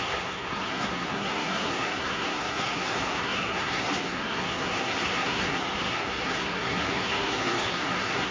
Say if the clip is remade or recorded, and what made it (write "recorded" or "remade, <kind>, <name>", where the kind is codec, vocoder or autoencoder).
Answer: remade, codec, SNAC